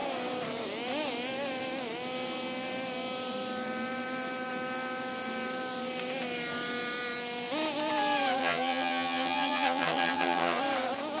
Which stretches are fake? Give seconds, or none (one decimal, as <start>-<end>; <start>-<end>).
8.4-10.6